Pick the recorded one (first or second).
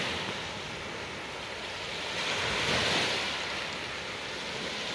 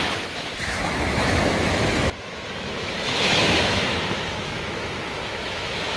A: first